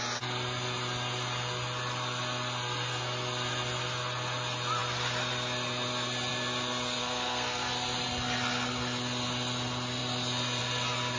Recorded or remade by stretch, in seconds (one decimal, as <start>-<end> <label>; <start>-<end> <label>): 0.0-7.0 recorded; 7.0-7.7 remade; 7.7-11.2 recorded